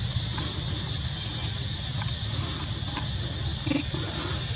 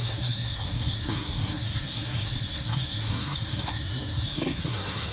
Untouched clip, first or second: first